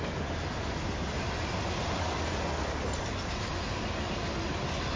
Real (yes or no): yes